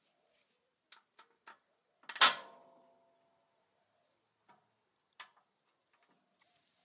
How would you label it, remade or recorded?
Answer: recorded